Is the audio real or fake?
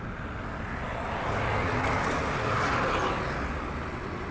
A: real